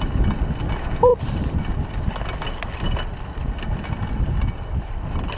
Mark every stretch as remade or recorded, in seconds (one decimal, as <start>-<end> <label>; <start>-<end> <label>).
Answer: 0.0-5.4 recorded